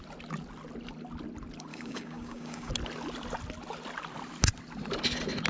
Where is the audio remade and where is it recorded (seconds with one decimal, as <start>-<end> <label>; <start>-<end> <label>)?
0.0-1.7 recorded; 1.7-2.7 remade; 2.7-5.5 recorded